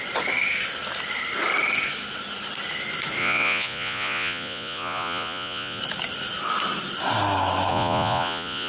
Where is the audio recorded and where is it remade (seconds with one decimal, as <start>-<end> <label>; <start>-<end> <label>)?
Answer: 0.0-3.2 recorded; 3.2-5.8 remade; 5.8-7.7 recorded; 7.7-8.7 remade

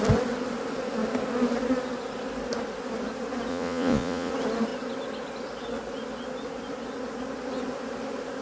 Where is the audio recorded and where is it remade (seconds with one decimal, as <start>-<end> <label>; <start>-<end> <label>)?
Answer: 0.0-3.5 recorded; 3.5-4.3 remade; 4.3-8.4 recorded

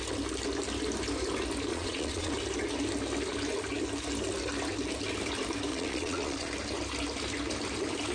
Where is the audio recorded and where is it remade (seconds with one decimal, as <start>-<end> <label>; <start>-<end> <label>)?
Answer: 0.0-1.7 recorded; 1.7-2.3 remade; 2.3-5.7 recorded; 5.7-6.5 remade; 6.5-8.1 recorded

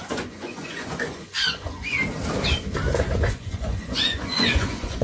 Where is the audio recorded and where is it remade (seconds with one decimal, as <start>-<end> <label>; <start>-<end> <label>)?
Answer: 0.0-2.0 remade; 2.0-3.0 recorded; 3.0-5.0 remade

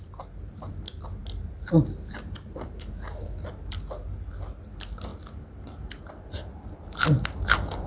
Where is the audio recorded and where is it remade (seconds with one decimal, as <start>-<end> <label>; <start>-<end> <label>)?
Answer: 0.0-7.9 recorded

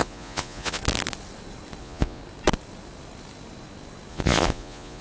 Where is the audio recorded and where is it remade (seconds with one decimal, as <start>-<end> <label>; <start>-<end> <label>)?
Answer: 0.0-0.8 remade; 0.8-1.8 recorded; 1.8-2.2 remade; 2.2-4.1 recorded; 4.1-5.0 remade